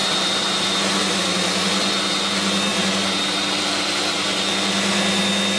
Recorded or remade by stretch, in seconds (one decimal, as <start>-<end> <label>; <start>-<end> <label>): 0.0-0.8 remade; 0.8-2.7 recorded; 2.7-4.4 remade; 4.4-5.6 recorded